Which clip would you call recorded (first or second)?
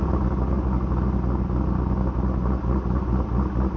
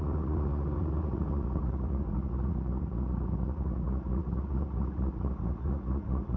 first